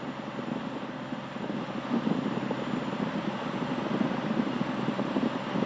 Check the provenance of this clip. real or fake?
real